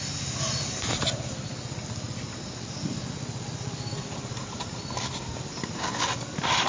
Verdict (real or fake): real